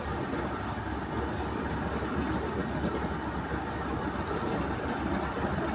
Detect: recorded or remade recorded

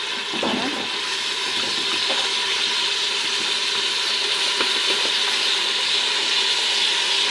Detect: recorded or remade recorded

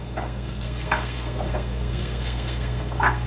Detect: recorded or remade remade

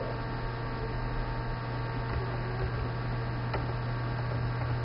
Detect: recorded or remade recorded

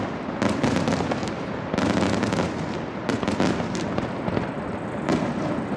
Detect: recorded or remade recorded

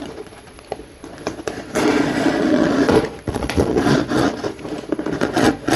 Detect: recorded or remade remade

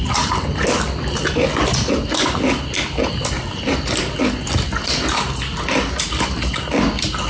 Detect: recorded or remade recorded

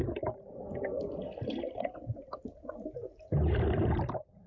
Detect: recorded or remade recorded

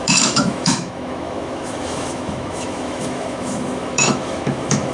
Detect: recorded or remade remade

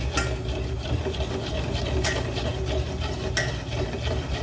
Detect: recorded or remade recorded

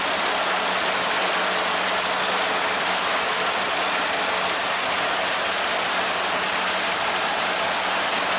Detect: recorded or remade recorded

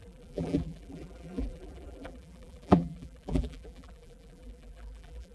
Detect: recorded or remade remade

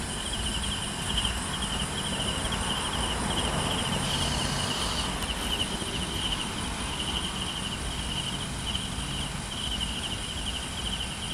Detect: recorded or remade recorded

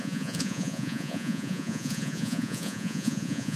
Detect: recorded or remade remade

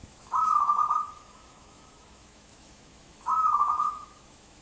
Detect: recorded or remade remade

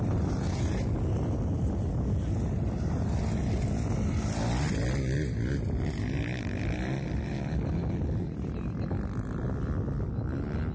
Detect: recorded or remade recorded